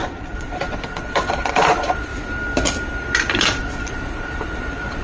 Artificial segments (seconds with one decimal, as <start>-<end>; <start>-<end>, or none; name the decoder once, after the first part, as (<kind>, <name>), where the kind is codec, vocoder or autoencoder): 0.0-2.1 (vocoder, Vocos); 3.6-5.0